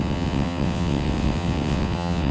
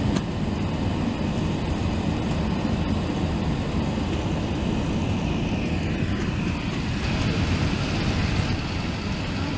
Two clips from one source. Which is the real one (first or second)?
second